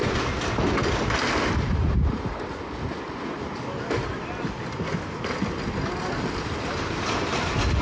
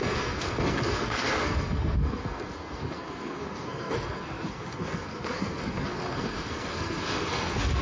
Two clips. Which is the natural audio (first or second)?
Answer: first